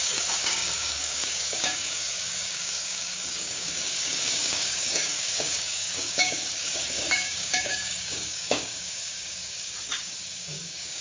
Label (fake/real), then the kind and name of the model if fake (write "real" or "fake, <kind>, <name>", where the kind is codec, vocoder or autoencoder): fake, codec, DAC